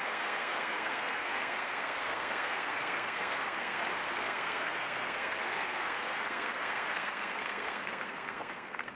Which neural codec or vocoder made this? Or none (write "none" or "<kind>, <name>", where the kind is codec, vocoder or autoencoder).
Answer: codec, SNAC